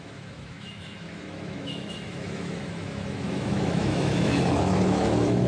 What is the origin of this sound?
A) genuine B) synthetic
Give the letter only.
B